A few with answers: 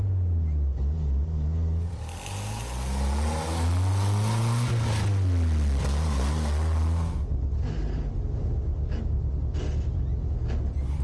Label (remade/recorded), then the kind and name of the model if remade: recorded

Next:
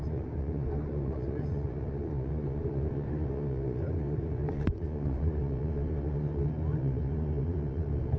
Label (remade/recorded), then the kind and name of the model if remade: remade, vocoder, Vocos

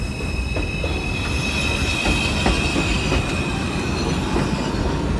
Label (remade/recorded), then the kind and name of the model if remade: recorded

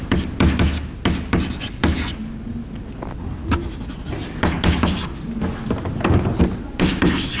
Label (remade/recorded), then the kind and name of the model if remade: recorded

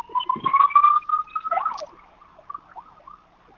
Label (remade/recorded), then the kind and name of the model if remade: recorded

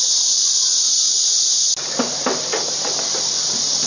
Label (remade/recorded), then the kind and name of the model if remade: recorded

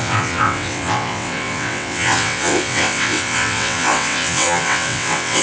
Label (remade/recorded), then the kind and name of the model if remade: remade, vocoder, WaveNeXt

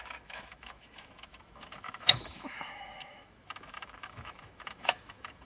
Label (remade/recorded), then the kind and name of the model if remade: remade, autoencoder, DAC-VAE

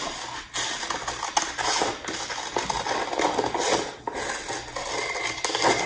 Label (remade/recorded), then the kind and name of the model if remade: recorded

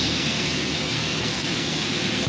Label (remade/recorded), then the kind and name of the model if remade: remade, codec, SNAC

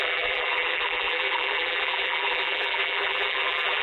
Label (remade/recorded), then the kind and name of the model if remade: remade, vocoder, BigVGAN v2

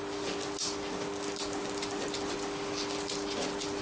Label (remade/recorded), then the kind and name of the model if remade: recorded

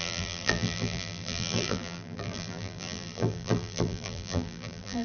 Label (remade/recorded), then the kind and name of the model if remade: remade, vocoder, BigVGAN v2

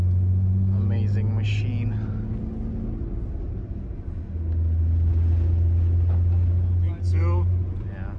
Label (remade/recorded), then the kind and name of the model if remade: recorded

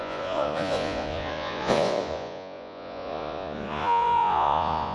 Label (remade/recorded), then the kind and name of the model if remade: remade, vocoder, Vocos